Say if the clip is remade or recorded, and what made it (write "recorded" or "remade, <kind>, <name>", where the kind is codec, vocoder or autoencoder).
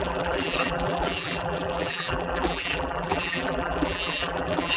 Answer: remade, vocoder, BigVGAN v2